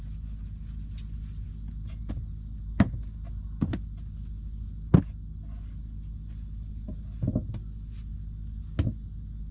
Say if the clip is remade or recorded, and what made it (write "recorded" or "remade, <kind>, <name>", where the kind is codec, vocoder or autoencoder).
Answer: recorded